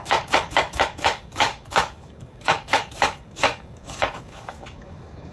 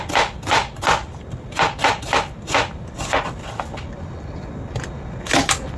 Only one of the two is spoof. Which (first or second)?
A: first